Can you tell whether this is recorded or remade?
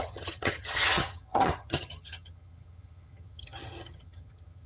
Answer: remade